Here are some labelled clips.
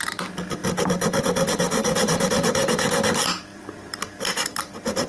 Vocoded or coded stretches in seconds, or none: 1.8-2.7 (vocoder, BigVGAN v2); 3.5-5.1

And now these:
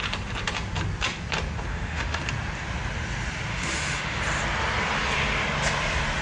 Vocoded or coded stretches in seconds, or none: 1.7-2.2 (autoencoder, DAC-VAE); 3.5-4.2

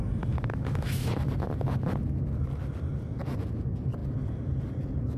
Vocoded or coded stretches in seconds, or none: 0.5-1.1 (autoencoder, DAC-VAE)